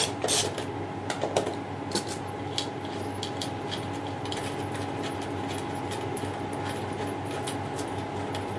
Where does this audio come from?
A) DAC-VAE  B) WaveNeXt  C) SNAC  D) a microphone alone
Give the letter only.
D